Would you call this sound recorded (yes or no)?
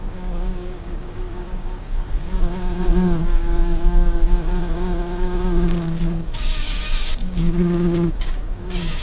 no